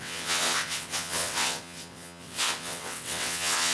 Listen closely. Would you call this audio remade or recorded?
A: remade